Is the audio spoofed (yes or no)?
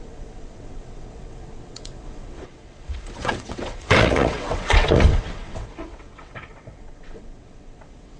yes